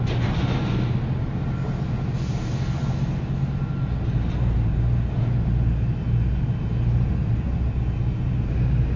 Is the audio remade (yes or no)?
no